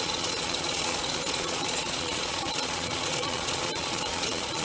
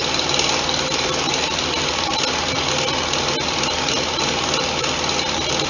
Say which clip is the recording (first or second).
second